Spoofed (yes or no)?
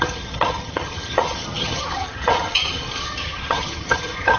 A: yes